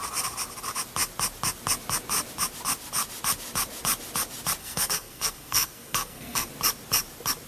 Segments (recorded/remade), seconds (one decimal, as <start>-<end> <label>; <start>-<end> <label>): 0.0-4.6 recorded; 4.6-6.5 remade; 6.5-7.5 recorded

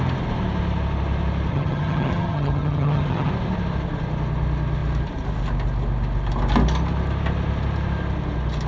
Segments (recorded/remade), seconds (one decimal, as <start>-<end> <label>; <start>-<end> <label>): 0.0-1.5 recorded; 1.5-3.3 remade; 3.3-8.7 recorded

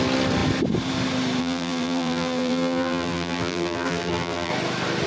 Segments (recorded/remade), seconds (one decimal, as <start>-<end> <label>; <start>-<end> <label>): 0.0-1.4 recorded; 1.4-4.5 remade; 4.5-5.1 recorded

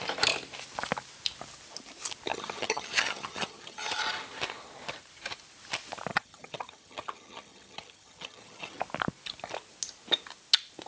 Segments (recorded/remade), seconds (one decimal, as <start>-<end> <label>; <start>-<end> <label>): 0.0-2.3 recorded; 2.3-3.9 remade; 3.9-6.1 recorded; 6.1-8.8 remade; 8.8-10.9 recorded

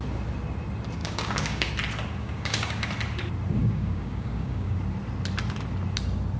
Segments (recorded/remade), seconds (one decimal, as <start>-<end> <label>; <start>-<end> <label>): 0.0-1.0 recorded; 1.0-1.7 remade; 1.7-2.2 recorded; 2.2-2.9 remade; 2.9-3.6 recorded; 3.6-4.8 remade; 4.8-6.4 recorded

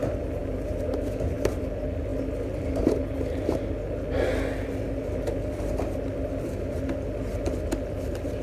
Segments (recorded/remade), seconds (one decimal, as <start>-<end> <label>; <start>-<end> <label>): 0.0-0.4 recorded; 0.4-1.6 remade; 1.6-8.4 recorded